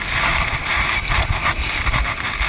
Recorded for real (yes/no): yes